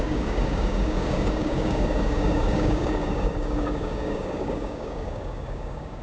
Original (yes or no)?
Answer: no